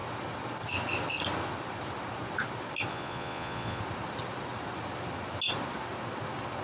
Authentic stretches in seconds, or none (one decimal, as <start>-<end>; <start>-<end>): 0.0-2.9; 3.8-6.6